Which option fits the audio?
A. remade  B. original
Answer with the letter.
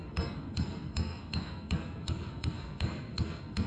A